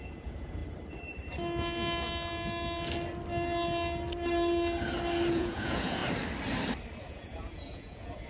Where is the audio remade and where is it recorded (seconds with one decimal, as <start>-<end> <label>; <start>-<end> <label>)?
0.0-0.6 remade; 0.6-5.3 recorded; 5.3-6.0 remade; 6.0-7.0 recorded; 7.0-8.3 remade